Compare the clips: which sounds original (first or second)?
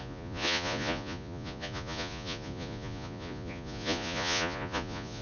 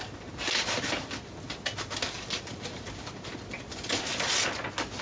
second